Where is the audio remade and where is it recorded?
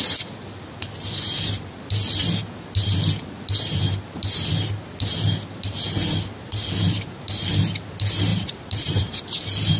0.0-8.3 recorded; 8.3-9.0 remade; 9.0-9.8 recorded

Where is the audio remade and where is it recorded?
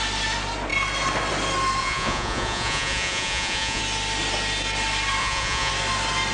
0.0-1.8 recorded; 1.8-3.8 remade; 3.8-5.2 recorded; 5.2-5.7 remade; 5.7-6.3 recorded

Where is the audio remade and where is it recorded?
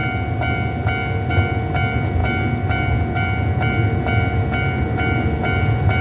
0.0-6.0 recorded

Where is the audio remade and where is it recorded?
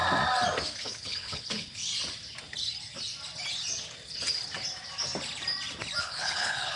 0.0-0.8 recorded; 0.8-1.9 remade; 1.9-6.0 recorded; 6.0-6.8 remade